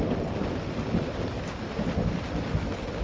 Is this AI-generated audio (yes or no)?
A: yes